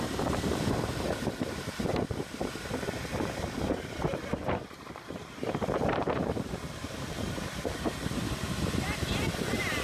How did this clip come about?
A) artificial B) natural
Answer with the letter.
A